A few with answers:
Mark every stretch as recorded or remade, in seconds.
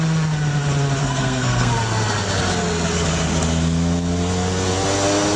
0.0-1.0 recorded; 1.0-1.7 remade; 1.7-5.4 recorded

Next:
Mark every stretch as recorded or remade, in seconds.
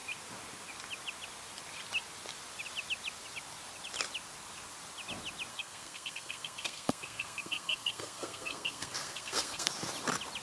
0.0-5.5 recorded; 5.5-9.7 remade; 9.7-10.4 recorded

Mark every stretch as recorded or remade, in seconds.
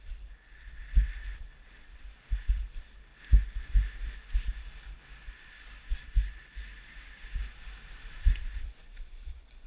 0.0-8.0 recorded; 8.0-9.7 remade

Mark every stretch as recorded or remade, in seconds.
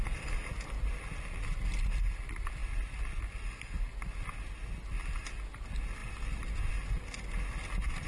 0.0-8.1 recorded